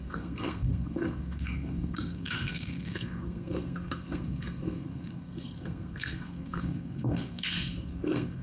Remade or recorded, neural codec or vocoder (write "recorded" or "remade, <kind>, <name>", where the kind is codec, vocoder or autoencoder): remade, codec, SNAC